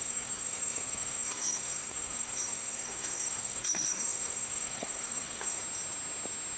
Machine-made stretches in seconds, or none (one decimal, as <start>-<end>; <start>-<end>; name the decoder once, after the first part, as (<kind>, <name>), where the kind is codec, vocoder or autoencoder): 0.0-5.6 (codec, SNAC)